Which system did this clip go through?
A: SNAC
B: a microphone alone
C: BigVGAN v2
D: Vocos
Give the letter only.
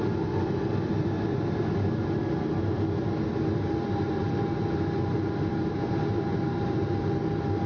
B